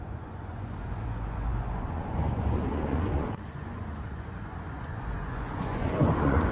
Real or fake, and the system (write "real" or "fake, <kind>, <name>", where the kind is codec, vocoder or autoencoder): fake, vocoder, Vocos